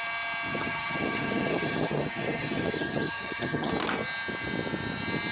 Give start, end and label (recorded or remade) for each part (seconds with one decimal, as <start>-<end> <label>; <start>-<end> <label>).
0.0-0.5 recorded; 0.5-3.7 remade; 3.7-5.3 recorded